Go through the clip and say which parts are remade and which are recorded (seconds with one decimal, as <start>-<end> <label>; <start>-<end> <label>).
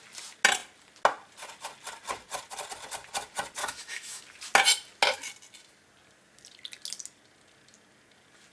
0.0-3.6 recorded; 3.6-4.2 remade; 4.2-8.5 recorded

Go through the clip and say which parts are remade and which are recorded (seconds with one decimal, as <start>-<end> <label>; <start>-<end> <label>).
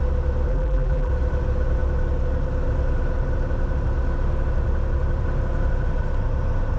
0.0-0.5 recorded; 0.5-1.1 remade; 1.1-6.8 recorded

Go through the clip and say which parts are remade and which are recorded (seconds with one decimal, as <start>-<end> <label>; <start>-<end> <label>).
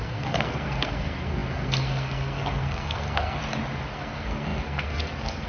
0.0-3.4 remade; 3.4-3.9 recorded; 3.9-5.5 remade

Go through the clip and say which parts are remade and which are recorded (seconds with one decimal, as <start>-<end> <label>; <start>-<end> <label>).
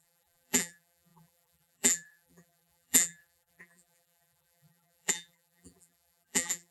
0.0-6.7 remade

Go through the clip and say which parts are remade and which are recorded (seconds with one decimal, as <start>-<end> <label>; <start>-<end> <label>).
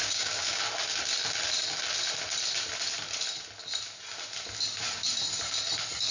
0.0-0.6 remade; 0.6-6.1 recorded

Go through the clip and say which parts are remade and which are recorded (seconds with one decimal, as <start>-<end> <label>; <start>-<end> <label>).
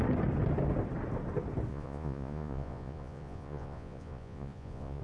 0.0-1.7 recorded; 1.7-5.0 remade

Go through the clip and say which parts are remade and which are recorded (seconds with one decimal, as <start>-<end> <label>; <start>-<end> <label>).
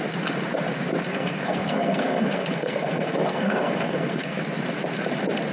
0.0-1.1 recorded; 1.1-4.4 remade; 4.4-5.5 recorded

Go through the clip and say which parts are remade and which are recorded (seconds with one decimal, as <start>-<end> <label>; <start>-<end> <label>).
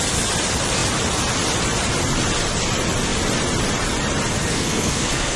0.0-4.5 recorded; 4.5-5.4 remade